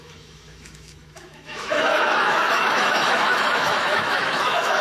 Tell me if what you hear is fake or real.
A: fake